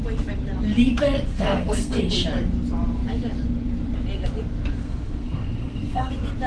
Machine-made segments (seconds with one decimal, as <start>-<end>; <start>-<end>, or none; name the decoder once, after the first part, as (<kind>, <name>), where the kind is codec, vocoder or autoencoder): 1.3-2.0 (codec, SNAC); 4.8-6.1